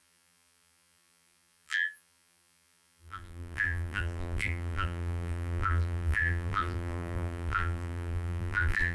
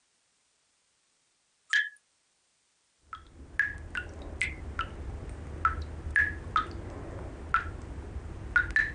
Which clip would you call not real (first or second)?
first